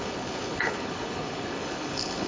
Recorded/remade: remade